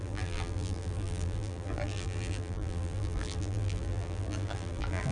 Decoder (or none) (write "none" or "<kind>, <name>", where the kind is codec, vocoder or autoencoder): vocoder, BigVGAN v2